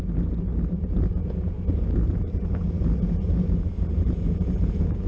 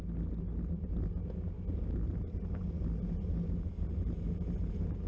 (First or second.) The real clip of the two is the second